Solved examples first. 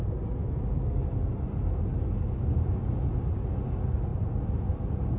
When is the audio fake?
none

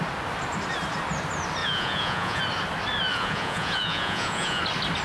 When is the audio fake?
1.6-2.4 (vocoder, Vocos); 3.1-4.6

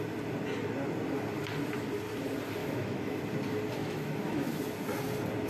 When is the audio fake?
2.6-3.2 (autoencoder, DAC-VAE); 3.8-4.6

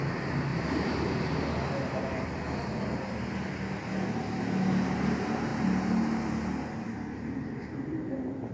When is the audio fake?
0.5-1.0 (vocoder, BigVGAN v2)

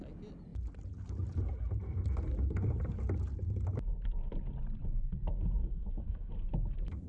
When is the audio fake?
5.6-6.3 (codec, SNAC)

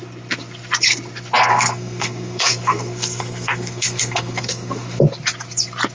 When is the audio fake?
1.5-5.0 (codec, SNAC)